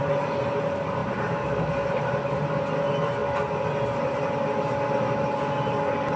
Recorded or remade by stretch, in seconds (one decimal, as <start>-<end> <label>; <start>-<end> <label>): 0.0-1.0 recorded; 1.0-2.0 remade; 2.0-6.2 recorded